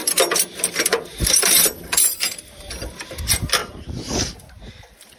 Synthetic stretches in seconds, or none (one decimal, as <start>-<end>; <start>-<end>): 0.9-2.9; 3.6-4.3